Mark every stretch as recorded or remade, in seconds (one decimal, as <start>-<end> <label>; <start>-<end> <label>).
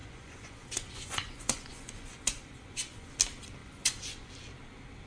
0.0-3.1 remade; 3.1-3.6 recorded; 3.6-4.3 remade; 4.3-5.1 recorded